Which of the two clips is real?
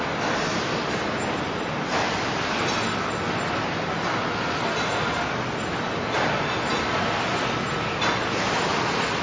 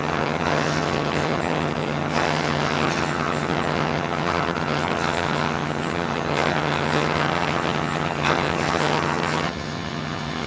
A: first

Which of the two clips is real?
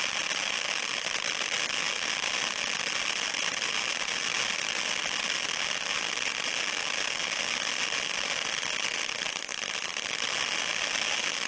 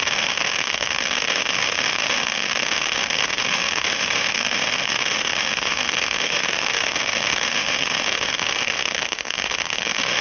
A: first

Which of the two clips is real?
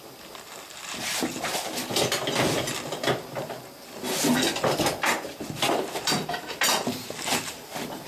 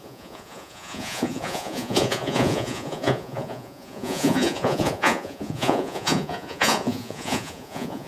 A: first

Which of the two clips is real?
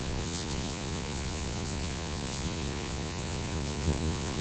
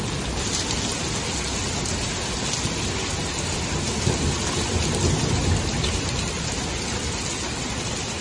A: second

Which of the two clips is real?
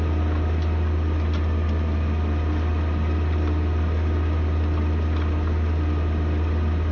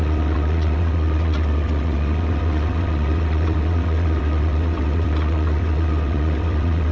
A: first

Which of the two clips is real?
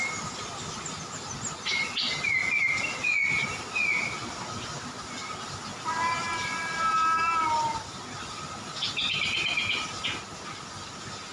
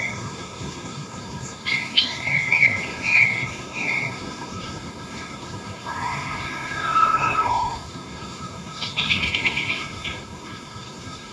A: first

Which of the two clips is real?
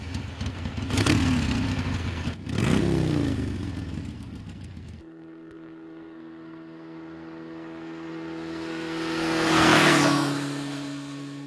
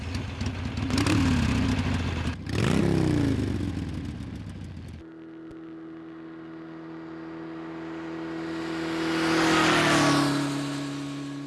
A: second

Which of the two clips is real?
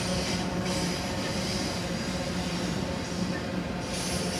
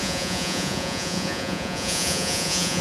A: first